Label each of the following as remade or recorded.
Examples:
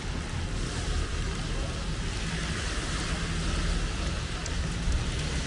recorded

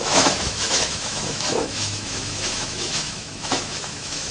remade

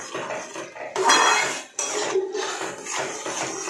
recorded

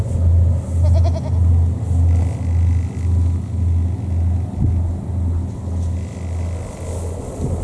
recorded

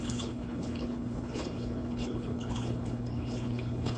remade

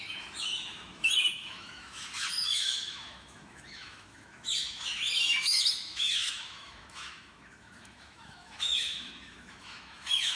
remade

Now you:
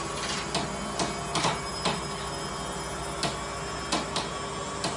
recorded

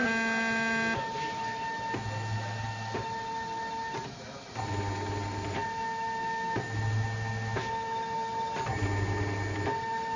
recorded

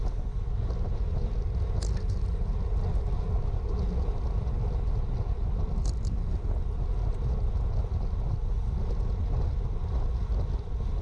recorded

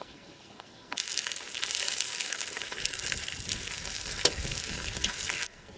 remade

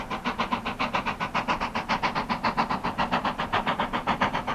recorded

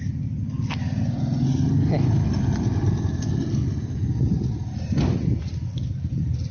recorded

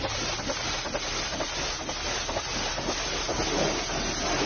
recorded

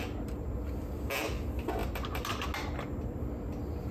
recorded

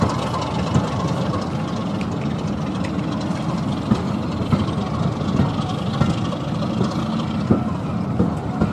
recorded